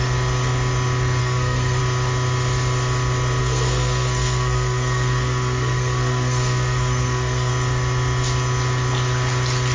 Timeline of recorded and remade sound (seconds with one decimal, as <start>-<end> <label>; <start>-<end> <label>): 0.0-1.2 recorded; 1.2-1.8 remade; 1.8-3.4 recorded; 3.4-7.5 remade; 7.5-9.7 recorded